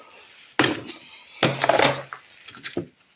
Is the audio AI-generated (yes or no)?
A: no